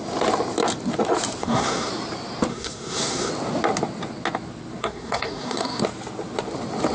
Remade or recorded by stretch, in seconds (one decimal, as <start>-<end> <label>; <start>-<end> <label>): 0.0-1.4 recorded; 1.4-1.9 remade; 1.9-2.5 recorded; 2.5-3.3 remade; 3.3-4.8 recorded; 4.8-5.8 remade; 5.8-6.9 recorded